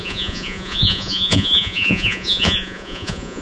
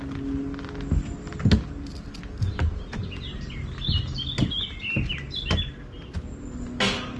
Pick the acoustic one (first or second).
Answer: second